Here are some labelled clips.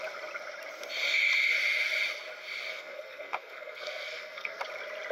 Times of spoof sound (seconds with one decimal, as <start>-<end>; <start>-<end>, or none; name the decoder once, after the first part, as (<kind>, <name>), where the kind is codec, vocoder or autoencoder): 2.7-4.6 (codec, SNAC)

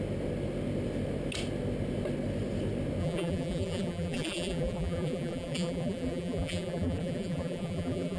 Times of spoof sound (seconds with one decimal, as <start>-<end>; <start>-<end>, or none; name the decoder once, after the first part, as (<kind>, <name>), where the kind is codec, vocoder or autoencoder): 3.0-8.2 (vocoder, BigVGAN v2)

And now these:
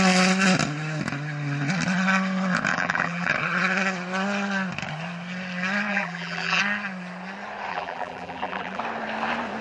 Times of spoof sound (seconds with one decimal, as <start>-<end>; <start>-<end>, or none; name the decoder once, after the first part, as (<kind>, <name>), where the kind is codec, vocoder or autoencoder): 2.7-3.3 (vocoder, BigVGAN v2); 5.9-6.6; 7.7-8.8

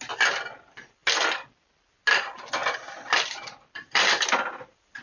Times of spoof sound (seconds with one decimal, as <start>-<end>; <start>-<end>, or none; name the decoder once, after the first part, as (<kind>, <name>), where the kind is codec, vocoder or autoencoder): 2.6-3.7 (vocoder, BigVGAN v2)

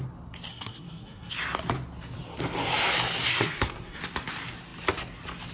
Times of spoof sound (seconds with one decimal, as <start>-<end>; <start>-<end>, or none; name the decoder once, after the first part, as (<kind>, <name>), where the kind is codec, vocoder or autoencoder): 0.5-1.3 (codec, SNAC); 3.3-4.0

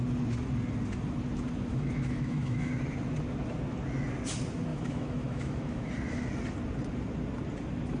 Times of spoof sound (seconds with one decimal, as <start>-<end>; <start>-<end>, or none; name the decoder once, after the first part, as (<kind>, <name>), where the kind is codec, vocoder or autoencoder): 1.7-2.7 (autoencoder, DAC-VAE); 4.7-5.9